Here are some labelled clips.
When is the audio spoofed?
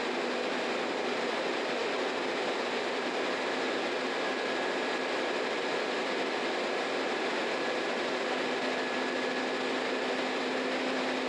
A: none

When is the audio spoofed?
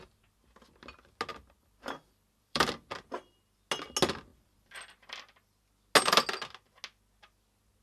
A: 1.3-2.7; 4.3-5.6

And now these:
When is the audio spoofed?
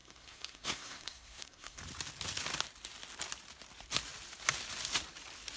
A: 0.0-1.8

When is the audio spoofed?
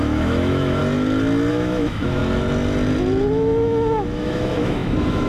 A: 0.0-0.8; 1.5-2.2; 3.3-5.3